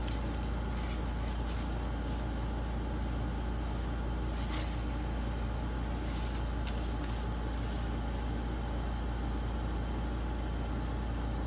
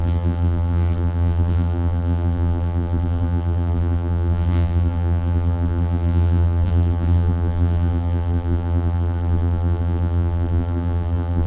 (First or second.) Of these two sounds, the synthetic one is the second